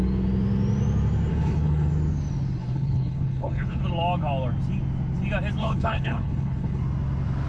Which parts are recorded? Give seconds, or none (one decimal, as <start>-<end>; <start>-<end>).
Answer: 0.0-1.3; 1.9-2.6; 3.8-5.6; 6.8-7.5